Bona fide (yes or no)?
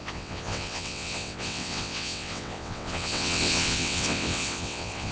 no